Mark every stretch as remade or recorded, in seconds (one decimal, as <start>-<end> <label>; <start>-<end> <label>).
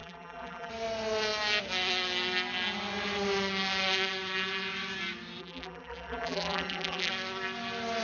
0.0-0.7 remade; 0.7-5.4 recorded; 5.4-7.1 remade; 7.1-8.0 recorded